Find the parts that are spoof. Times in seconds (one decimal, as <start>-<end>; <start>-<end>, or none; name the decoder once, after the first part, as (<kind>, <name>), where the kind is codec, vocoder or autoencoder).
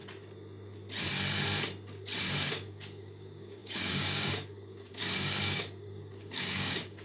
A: 2.2-7.0 (codec, DAC)